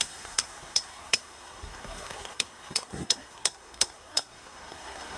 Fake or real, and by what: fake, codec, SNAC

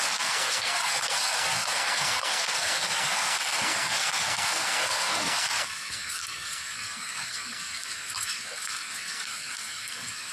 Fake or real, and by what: fake, codec, SNAC